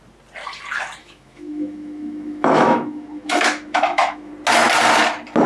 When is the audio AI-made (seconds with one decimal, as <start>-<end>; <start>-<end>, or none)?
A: 1.0-4.3